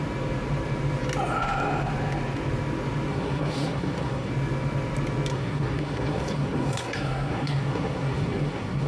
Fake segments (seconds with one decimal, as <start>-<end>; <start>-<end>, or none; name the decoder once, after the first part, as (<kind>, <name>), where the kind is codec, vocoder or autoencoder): 3.1-4.3 (codec, SNAC); 5.3-8.9